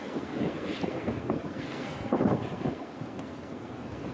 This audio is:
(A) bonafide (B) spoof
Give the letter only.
B